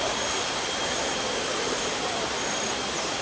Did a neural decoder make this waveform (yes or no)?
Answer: yes